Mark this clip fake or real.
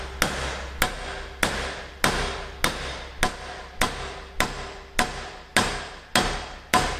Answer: real